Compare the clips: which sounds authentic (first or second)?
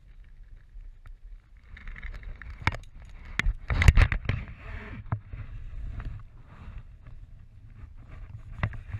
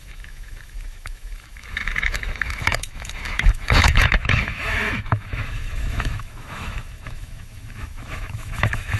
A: first